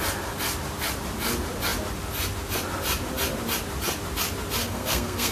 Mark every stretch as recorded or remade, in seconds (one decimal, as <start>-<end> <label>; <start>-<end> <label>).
0.0-4.6 recorded; 4.6-5.3 remade